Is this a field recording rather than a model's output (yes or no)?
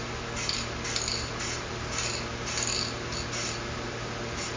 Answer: yes